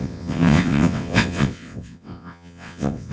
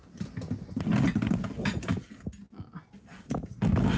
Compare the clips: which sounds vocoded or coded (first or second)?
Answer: first